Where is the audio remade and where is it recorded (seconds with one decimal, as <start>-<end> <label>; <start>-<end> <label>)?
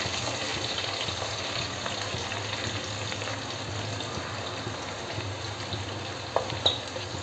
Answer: 0.0-7.2 recorded